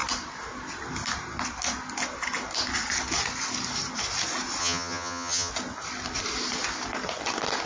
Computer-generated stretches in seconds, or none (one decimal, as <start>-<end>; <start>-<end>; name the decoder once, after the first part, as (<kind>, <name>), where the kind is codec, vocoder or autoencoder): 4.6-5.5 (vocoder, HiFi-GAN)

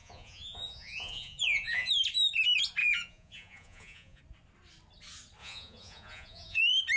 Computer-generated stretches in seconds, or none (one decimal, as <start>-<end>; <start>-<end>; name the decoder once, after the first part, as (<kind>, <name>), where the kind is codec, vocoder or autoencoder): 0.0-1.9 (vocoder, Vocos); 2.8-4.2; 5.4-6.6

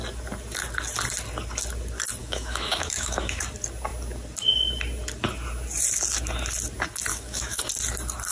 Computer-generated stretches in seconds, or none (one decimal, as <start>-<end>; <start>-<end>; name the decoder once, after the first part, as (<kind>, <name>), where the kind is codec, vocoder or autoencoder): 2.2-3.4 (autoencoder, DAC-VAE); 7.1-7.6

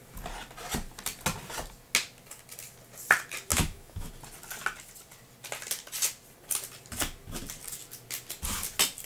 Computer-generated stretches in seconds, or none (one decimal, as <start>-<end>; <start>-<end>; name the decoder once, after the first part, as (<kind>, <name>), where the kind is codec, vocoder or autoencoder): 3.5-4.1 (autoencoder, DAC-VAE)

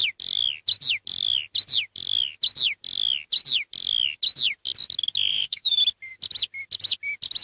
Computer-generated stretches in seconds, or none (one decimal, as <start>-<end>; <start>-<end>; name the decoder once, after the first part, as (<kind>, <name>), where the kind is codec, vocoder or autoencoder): 5.3-5.8 (autoencoder, DAC-VAE)

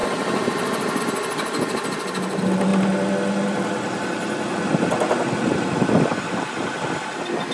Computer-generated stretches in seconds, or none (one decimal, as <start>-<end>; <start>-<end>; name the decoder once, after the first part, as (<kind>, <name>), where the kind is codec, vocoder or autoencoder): none